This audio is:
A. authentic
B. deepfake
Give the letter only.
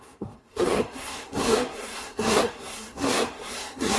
B